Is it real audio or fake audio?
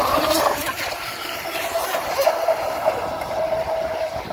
fake